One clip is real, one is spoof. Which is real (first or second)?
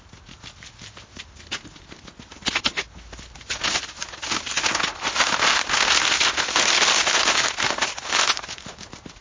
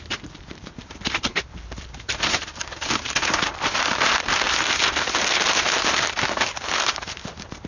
first